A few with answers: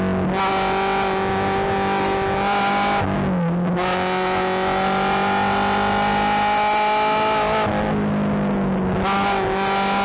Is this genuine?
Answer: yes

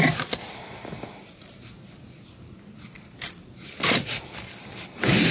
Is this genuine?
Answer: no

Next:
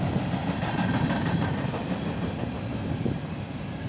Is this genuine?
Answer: no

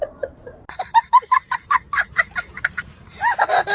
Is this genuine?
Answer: no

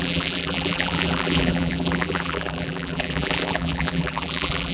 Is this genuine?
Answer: no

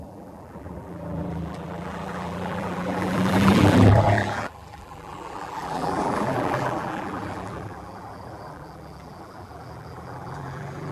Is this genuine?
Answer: no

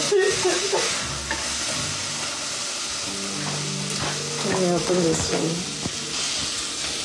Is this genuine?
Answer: yes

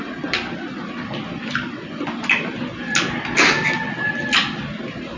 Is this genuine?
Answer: yes